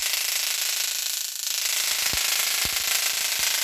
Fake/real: real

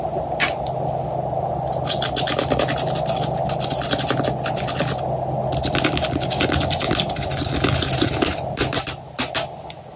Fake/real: real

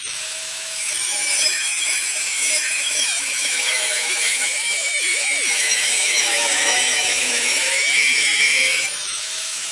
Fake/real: fake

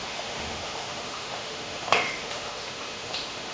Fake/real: fake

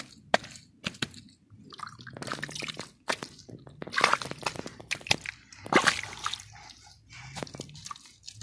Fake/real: real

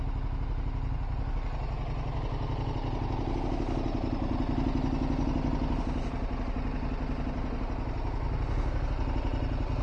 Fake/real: real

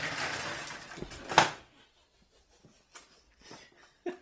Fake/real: real